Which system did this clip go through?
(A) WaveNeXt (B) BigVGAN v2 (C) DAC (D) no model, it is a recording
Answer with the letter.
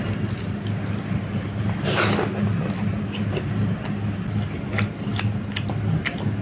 D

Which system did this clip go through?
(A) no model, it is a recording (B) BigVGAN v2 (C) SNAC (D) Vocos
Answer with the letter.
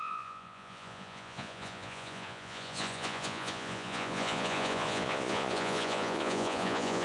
D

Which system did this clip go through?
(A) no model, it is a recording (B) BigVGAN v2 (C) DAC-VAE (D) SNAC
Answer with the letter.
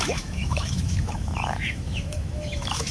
C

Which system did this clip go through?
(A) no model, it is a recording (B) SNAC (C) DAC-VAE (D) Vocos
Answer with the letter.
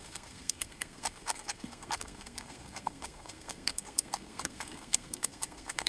B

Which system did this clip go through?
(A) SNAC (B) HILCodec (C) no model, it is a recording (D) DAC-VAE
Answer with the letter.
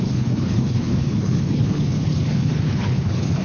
B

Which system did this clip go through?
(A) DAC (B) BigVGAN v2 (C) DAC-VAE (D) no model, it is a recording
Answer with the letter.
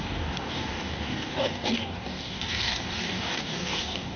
A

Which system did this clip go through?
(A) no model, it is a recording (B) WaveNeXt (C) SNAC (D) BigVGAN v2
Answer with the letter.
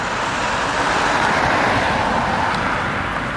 A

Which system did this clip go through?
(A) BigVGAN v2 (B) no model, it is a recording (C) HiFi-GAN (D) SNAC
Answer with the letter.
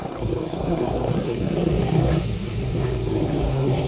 D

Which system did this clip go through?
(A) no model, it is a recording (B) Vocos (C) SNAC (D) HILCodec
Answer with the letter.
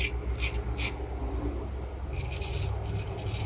A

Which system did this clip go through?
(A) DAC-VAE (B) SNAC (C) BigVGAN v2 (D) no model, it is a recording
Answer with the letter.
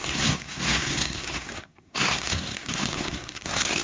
B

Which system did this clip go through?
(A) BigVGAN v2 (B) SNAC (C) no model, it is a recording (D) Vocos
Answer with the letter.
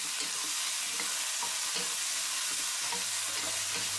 C